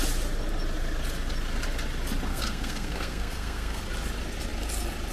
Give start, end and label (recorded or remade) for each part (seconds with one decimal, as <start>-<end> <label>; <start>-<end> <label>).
0.0-2.3 recorded; 2.3-3.8 remade; 3.8-5.1 recorded